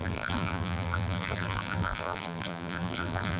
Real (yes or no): no